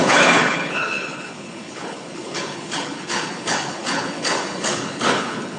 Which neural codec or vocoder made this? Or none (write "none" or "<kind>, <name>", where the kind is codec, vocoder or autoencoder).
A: codec, HILCodec